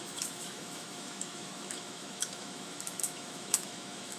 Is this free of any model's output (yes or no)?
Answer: no